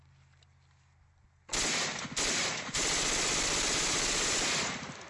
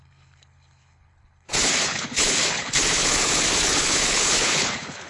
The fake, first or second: second